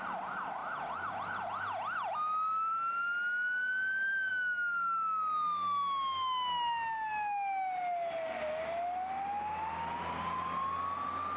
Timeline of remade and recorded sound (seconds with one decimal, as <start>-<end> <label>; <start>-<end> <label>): 0.0-11.4 recorded